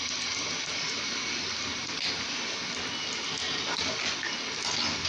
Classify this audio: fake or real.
real